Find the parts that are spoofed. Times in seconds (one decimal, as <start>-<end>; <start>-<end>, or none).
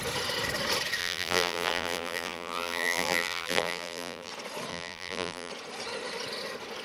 1.0-4.3; 4.7-5.5